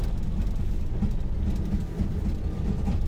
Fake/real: real